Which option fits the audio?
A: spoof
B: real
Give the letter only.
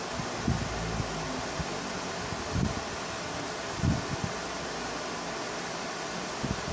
B